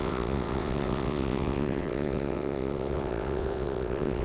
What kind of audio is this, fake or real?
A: fake